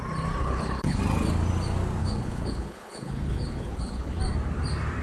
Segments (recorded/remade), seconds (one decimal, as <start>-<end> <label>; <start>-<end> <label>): 0.0-0.4 recorded; 0.4-1.0 remade; 1.0-2.0 recorded; 2.0-4.2 remade; 4.2-5.0 recorded